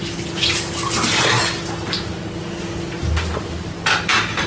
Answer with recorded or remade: recorded